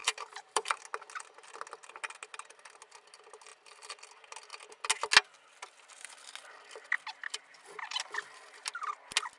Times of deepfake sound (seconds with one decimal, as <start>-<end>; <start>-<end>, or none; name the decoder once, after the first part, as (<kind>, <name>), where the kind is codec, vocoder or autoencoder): 0.0-0.8 (vocoder, BigVGAN v2)